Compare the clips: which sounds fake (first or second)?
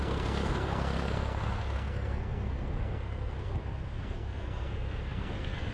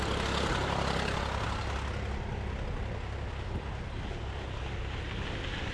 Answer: first